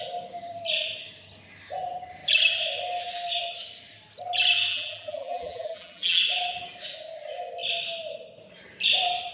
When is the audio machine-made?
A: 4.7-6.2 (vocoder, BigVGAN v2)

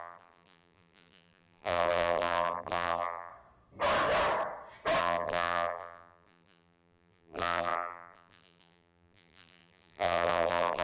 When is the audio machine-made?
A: 0.0-3.3 (vocoder, BigVGAN v2); 5.0-10.8

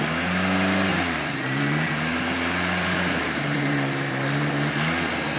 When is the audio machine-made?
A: 0.9-4.1 (vocoder, BigVGAN v2)

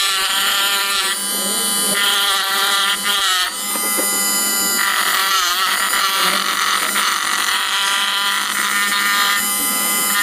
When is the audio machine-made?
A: 0.0-10.2 (vocoder, BigVGAN v2)